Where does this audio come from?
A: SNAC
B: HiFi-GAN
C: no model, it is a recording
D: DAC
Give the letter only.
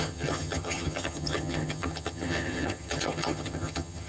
B